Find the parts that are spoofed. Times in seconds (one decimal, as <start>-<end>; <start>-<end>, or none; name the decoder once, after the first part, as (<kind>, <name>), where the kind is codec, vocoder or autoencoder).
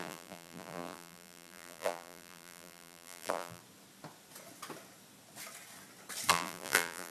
0.0-3.6 (vocoder, BigVGAN v2); 6.3-7.1